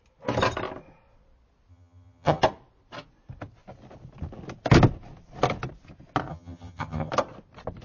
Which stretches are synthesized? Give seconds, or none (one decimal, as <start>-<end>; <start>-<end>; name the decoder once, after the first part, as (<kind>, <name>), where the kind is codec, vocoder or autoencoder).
1.7-2.4 (vocoder, HiFi-GAN); 6.3-7.1